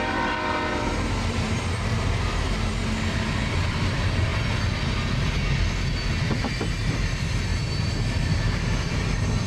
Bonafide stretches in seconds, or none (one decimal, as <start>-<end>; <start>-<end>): 2.7-3.4; 4.3-6.5